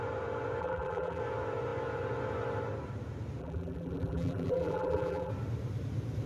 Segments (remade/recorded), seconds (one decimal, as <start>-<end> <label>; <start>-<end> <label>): 0.0-0.6 recorded; 0.6-1.2 remade; 1.2-3.4 recorded; 3.4-5.3 remade; 5.3-6.3 recorded